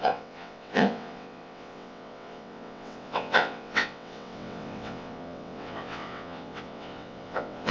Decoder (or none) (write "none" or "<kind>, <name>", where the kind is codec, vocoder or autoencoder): vocoder, WaveNeXt